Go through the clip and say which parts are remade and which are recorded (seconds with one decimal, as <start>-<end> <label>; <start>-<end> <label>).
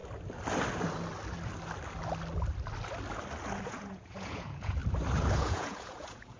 0.0-3.6 recorded; 3.6-4.8 remade; 4.8-5.4 recorded; 5.4-6.4 remade